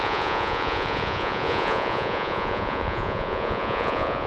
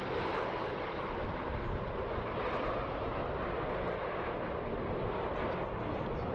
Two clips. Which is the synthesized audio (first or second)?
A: first